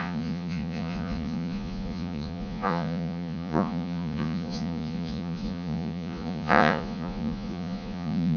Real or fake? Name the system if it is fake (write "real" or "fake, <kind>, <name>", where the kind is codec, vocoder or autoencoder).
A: fake, vocoder, Vocos